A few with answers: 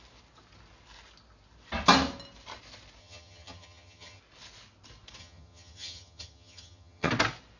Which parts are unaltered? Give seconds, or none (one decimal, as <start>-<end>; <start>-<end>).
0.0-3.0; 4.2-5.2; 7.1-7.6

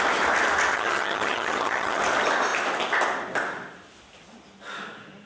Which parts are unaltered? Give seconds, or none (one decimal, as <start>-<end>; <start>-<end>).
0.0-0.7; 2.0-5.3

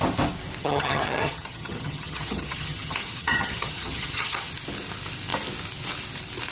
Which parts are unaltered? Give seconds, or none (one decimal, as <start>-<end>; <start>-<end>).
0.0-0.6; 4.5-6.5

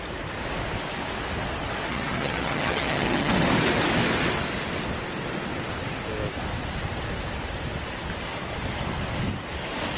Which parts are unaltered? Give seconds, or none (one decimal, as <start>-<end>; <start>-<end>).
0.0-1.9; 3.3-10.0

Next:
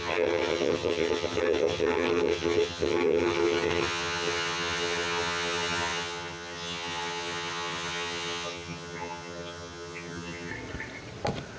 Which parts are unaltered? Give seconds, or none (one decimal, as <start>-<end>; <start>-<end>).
10.5-11.6

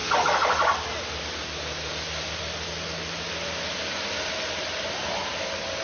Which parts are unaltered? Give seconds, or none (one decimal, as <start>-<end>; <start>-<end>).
0.0-5.8

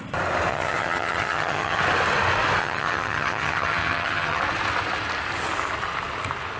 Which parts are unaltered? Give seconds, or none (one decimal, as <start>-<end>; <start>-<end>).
0.0-0.5; 1.8-2.6; 4.4-6.6